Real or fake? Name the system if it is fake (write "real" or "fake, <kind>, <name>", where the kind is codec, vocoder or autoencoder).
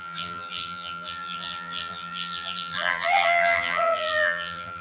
fake, vocoder, BigVGAN v2